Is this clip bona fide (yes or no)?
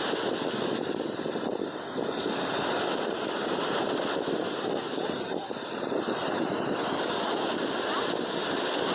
yes